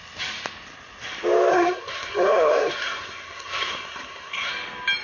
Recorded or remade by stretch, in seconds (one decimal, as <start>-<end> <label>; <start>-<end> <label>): 0.0-1.5 recorded; 1.5-4.5 remade; 4.5-5.0 recorded